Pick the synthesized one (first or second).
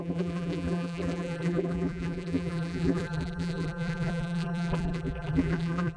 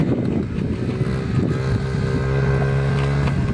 first